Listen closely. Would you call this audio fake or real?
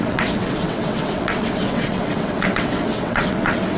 fake